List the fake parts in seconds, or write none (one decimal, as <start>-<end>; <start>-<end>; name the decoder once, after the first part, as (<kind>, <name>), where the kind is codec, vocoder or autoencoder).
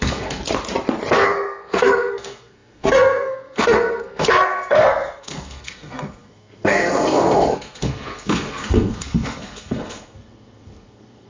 0.0-0.4 (codec, SNAC); 1.1-11.3